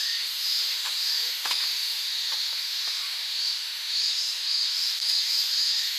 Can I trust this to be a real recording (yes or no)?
no